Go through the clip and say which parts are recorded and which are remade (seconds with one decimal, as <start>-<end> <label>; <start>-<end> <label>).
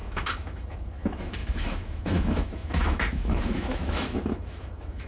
0.0-5.1 remade